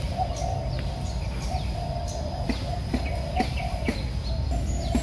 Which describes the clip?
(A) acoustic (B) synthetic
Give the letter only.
A